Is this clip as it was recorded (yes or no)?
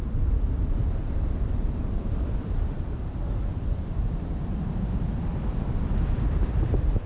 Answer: no